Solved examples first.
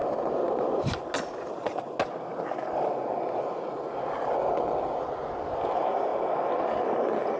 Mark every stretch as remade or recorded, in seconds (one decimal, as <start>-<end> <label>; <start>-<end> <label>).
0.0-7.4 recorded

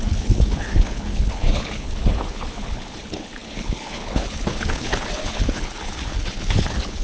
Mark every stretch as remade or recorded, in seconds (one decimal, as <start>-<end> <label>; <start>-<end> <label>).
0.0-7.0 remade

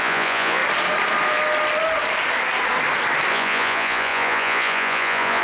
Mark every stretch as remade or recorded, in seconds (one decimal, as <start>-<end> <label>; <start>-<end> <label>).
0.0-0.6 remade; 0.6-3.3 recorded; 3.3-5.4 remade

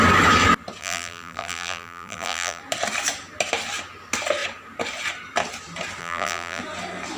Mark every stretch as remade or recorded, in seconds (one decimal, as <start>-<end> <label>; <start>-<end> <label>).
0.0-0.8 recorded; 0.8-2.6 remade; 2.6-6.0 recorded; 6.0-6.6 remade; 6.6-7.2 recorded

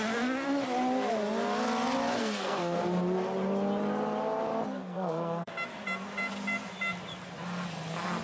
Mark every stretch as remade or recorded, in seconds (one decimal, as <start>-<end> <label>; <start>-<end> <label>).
0.0-2.2 recorded; 2.2-2.8 remade; 2.8-4.8 recorded; 4.8-5.5 remade; 5.5-8.2 recorded

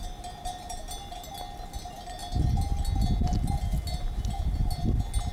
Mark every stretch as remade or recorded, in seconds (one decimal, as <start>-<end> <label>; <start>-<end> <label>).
0.0-5.3 recorded